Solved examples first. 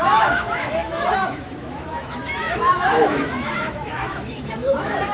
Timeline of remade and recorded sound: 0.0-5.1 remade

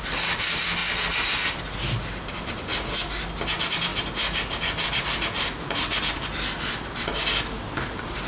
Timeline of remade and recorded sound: 0.0-8.3 recorded

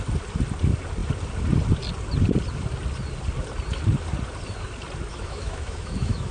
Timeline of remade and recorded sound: 0.0-5.1 recorded; 5.1-6.3 remade

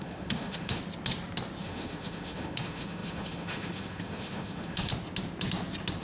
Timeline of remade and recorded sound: 0.0-0.8 remade; 0.8-1.6 recorded; 1.6-4.9 remade; 4.9-6.0 recorded

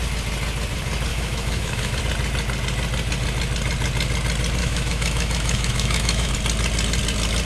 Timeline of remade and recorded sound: 0.0-1.1 recorded; 1.1-2.0 remade; 2.0-4.6 recorded; 4.6-6.3 remade; 6.3-7.4 recorded